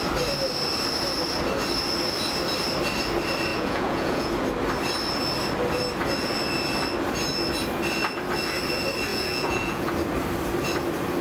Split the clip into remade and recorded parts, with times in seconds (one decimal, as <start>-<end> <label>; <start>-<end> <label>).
0.0-3.5 recorded; 3.5-4.3 remade; 4.3-9.1 recorded; 9.1-9.9 remade; 9.9-11.2 recorded